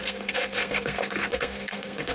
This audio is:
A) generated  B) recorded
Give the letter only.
A